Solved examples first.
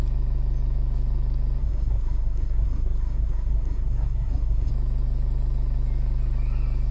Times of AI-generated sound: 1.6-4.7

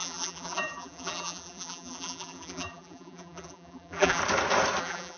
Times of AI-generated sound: 0.0-4.2; 4.8-5.2

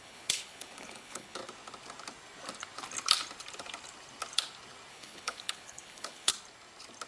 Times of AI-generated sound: 0.0-1.4; 4.9-6.3